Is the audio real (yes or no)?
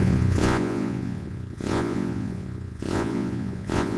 no